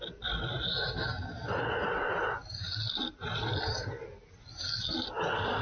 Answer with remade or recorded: recorded